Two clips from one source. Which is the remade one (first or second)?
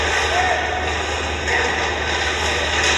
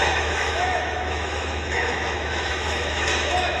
second